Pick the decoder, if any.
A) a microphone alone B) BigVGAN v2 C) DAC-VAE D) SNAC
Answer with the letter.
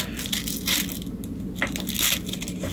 A